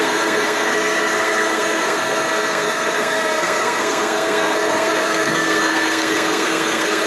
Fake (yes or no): yes